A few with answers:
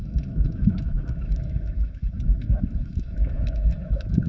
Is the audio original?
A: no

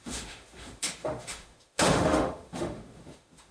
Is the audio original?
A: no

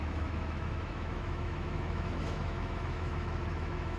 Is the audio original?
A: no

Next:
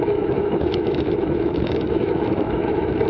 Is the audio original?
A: no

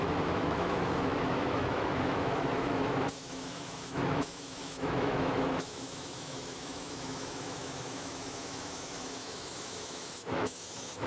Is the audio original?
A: no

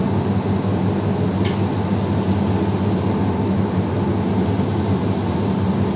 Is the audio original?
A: yes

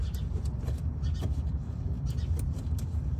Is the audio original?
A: yes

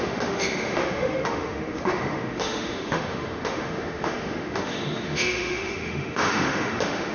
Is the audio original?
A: no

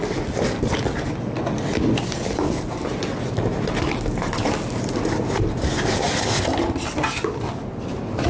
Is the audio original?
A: yes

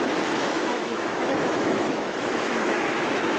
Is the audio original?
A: no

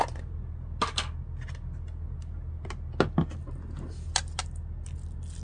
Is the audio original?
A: yes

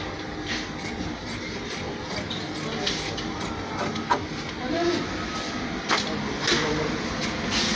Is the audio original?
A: yes